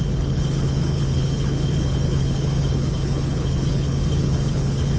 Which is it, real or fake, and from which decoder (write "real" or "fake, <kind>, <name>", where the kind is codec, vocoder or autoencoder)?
fake, codec, HILCodec